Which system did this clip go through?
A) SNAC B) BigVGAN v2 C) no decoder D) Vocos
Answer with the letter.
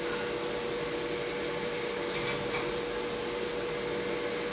C